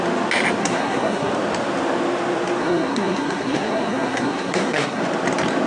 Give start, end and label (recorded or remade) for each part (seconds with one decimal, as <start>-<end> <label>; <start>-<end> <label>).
0.0-0.6 recorded; 0.6-1.3 remade; 1.3-2.6 recorded; 2.6-5.0 remade; 5.0-5.7 recorded